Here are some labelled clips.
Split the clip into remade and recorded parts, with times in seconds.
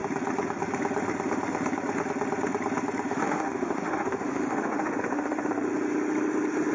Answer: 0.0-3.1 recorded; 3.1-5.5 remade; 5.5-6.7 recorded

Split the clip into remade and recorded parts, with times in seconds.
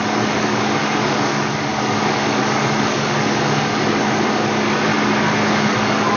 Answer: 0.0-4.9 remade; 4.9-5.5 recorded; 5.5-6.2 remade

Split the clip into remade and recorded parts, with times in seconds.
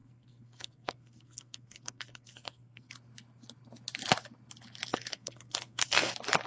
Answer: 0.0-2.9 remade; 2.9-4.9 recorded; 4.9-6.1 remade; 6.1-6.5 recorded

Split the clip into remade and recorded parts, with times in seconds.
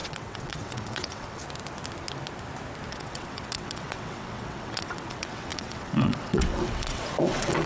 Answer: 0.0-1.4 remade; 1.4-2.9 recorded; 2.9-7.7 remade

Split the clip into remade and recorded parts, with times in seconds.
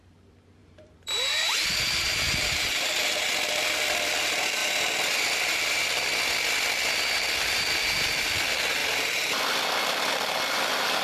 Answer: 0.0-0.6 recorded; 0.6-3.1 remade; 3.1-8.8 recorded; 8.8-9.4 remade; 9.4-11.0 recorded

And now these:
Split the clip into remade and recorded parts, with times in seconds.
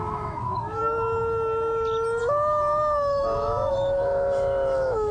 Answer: 0.0-0.8 remade; 0.8-2.2 recorded; 2.2-5.1 remade